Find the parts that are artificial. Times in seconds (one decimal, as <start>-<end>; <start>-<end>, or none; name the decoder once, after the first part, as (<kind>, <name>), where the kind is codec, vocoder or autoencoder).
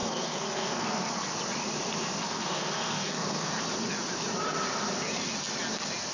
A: 0.0-1.1 (codec, SNAC); 2.2-3.5